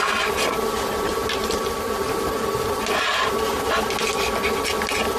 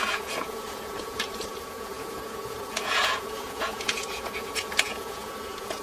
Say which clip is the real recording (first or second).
first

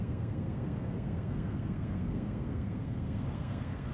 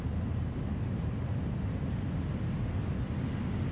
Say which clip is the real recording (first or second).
second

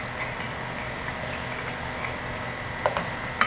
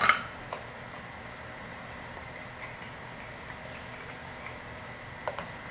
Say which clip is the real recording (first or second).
first